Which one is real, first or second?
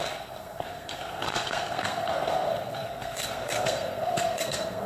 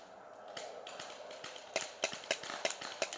second